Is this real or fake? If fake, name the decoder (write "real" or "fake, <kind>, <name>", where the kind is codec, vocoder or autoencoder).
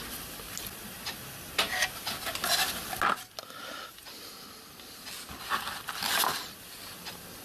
real